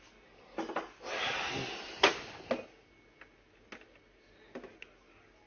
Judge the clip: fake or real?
real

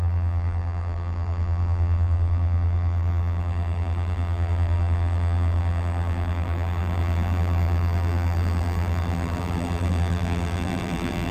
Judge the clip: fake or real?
fake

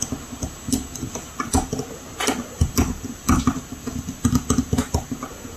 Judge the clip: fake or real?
real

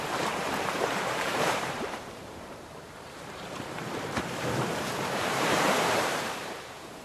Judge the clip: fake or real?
fake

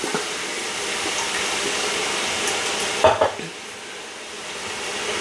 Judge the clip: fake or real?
fake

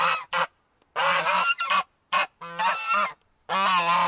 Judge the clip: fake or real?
real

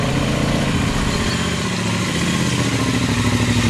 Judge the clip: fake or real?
real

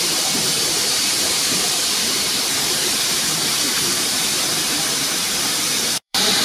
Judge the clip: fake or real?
fake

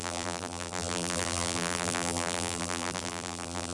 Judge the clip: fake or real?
fake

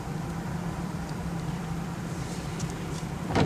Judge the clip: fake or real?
fake